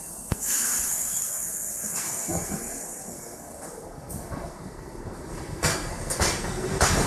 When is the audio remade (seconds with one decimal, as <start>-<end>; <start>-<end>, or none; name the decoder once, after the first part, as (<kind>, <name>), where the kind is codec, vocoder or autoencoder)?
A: 0.0-7.1 (codec, SNAC)